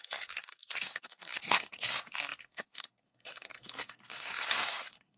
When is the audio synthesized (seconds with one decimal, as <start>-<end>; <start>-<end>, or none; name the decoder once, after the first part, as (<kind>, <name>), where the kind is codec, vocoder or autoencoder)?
0.0-5.2 (codec, SNAC)